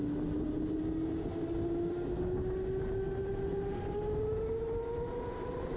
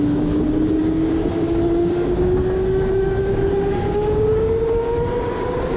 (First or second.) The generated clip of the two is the second